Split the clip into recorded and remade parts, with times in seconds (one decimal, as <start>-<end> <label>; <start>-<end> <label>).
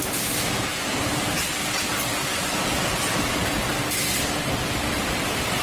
0.0-2.3 recorded; 2.3-3.3 remade; 3.3-5.6 recorded